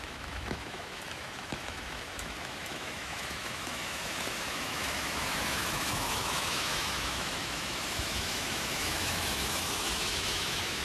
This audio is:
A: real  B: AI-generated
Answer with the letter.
B